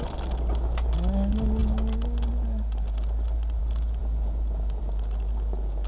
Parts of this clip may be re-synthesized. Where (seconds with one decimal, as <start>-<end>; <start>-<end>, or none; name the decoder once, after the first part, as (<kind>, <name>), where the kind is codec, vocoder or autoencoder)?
none